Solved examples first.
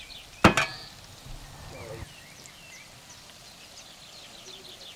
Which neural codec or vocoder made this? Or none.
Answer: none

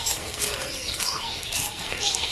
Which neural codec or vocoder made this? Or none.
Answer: codec, SNAC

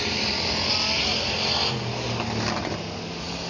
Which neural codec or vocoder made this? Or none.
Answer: none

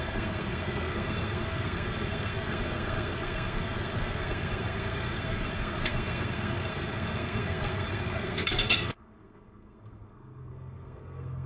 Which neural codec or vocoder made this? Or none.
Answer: codec, SNAC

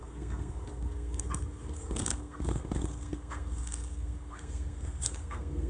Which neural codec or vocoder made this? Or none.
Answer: codec, SNAC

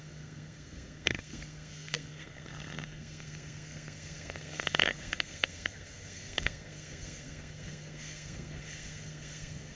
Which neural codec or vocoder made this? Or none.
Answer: codec, SNAC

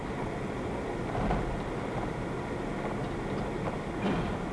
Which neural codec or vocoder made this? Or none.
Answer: none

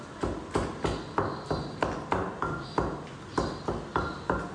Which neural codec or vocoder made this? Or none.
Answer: none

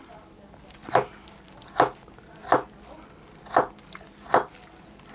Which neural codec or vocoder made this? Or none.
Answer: none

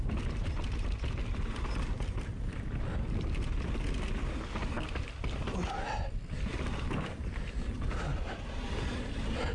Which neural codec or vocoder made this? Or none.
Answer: none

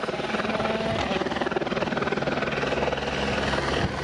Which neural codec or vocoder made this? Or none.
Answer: none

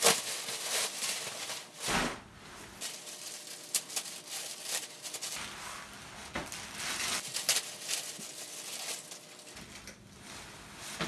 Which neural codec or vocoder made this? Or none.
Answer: none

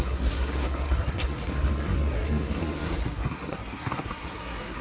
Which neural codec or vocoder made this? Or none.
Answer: codec, SNAC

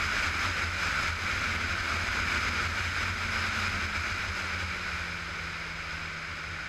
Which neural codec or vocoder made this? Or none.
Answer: none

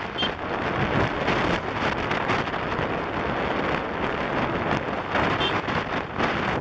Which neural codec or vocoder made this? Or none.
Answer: none